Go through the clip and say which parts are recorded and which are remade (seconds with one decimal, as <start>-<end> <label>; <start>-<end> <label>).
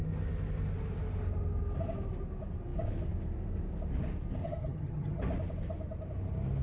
0.0-4.4 recorded; 4.4-5.2 remade; 5.2-6.6 recorded